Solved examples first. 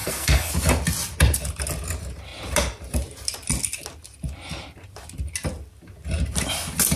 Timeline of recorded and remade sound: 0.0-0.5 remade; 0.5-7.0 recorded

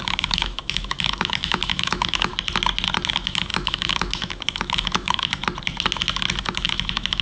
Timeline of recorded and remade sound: 0.0-2.3 remade; 2.3-3.1 recorded; 3.1-5.4 remade; 5.4-6.4 recorded; 6.4-7.2 remade

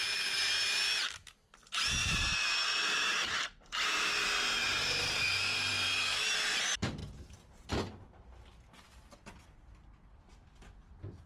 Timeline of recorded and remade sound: 0.0-2.0 recorded; 2.0-3.3 remade; 3.3-7.0 recorded; 7.0-7.7 remade; 7.7-11.3 recorded

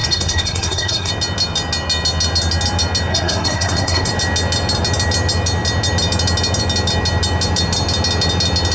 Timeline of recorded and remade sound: 0.0-1.1 remade; 1.1-3.1 recorded; 3.1-4.1 remade; 4.1-8.7 recorded

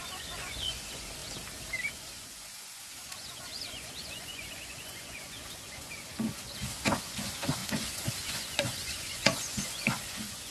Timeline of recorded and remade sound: 0.0-1.2 remade; 1.2-1.9 recorded; 1.9-10.5 remade

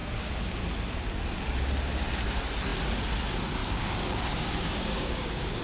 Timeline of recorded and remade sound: 0.0-0.6 remade; 0.6-3.6 recorded; 3.6-5.6 remade

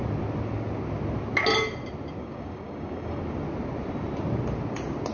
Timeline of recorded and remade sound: 0.0-2.2 recorded; 2.2-3.2 remade; 3.2-5.1 recorded

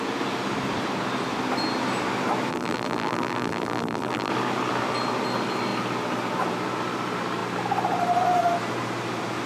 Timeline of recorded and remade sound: 0.0-2.5 recorded; 2.5-4.3 remade; 4.3-9.5 recorded